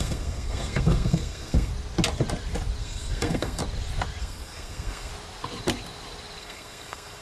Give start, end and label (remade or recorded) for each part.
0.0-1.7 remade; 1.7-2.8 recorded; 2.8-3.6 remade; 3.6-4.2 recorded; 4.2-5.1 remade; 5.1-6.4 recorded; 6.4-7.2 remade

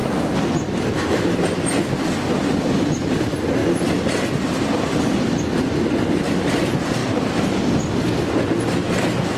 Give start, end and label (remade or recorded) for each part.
0.0-9.4 recorded

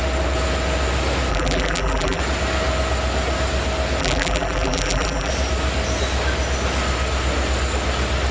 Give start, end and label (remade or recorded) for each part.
0.0-1.3 recorded; 1.3-2.2 remade; 2.2-4.0 recorded; 4.0-5.3 remade; 5.3-8.3 recorded

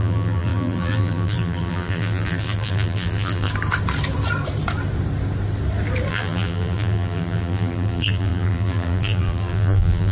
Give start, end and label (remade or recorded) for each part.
0.0-3.5 remade; 3.5-6.1 recorded; 6.1-10.1 remade

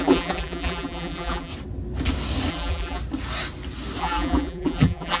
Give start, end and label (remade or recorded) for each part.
0.0-1.5 remade; 1.5-2.5 recorded; 2.5-3.0 remade; 3.0-4.0 recorded; 4.0-5.2 remade